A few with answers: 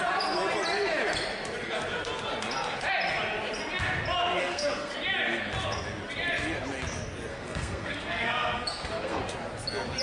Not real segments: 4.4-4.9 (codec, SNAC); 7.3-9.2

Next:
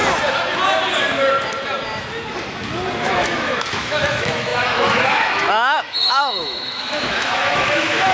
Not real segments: 3.0-8.1 (autoencoder, DAC-VAE)